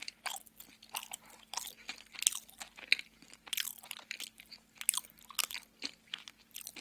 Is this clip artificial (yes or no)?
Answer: no